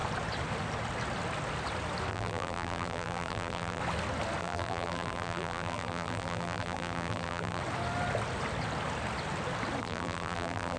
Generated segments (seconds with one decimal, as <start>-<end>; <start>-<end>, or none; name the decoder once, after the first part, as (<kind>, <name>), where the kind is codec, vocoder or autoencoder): 2.1-3.8 (vocoder, BigVGAN v2); 4.4-7.6; 9.8-10.8